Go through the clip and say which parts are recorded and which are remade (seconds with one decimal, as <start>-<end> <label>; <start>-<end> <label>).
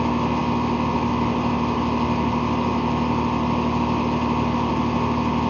0.0-5.5 recorded